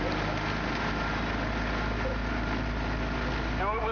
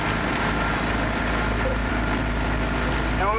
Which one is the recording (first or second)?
first